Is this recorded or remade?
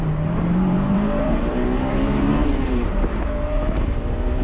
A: remade